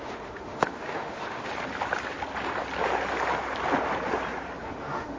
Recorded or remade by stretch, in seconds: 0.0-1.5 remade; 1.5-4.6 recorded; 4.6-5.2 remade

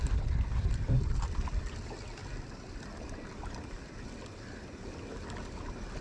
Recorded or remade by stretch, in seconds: 0.0-6.0 recorded

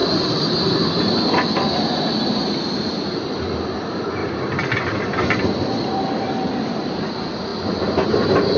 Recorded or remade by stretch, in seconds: 0.0-4.2 recorded; 4.2-6.1 remade; 6.1-7.5 recorded; 7.5-8.6 remade